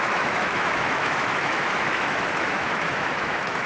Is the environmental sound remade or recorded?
remade